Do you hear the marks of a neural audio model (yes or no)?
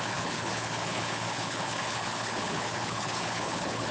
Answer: yes